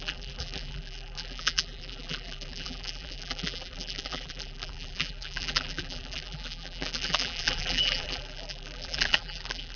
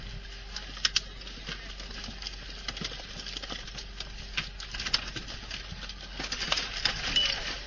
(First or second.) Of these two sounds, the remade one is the first